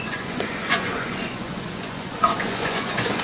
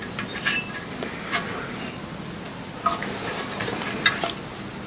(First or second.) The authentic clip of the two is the second